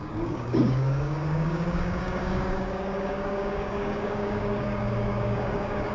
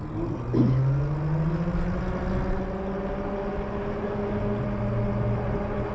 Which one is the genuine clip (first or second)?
second